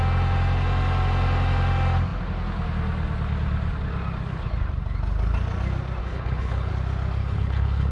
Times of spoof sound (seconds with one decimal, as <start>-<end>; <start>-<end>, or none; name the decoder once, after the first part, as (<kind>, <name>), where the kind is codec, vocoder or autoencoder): 6.0-6.7 (codec, HILCodec); 7.2-7.9